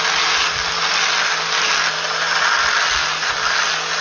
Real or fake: real